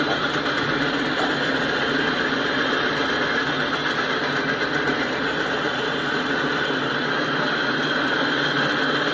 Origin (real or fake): real